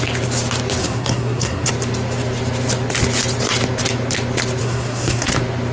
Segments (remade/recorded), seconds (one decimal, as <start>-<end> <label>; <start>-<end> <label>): 0.0-0.8 recorded; 0.8-1.7 remade; 1.7-4.6 recorded; 4.6-5.3 remade; 5.3-5.7 recorded